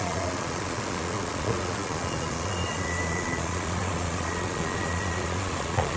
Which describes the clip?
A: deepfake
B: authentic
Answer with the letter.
A